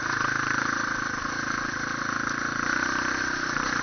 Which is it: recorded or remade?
recorded